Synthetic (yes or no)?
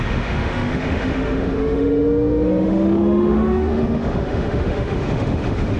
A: yes